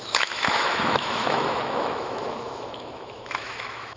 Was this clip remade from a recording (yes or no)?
yes